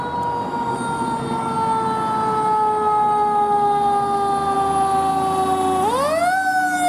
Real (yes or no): yes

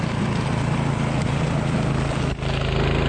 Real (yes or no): yes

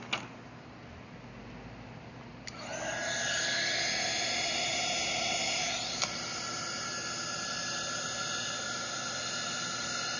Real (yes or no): yes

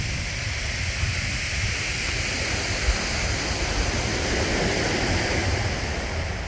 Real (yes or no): yes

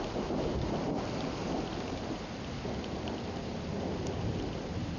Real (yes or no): yes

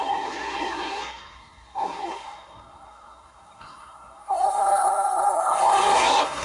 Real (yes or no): no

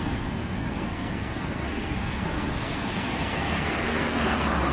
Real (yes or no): no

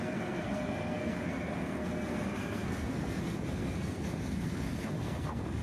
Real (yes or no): no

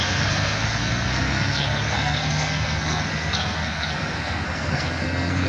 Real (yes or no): no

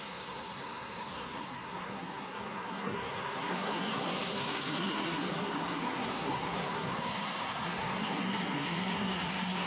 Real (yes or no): no